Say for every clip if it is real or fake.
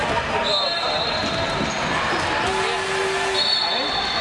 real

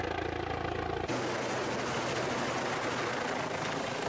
real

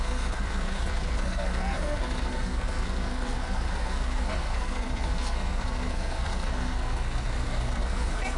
fake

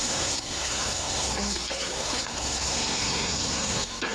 fake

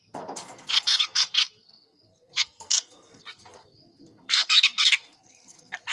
fake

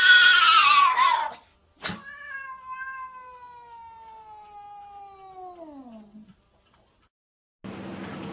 real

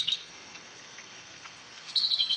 fake